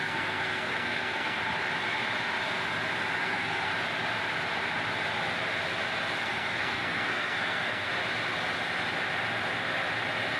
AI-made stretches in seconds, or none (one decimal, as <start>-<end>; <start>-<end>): 0.0-1.4; 3.2-3.7; 6.2-7.9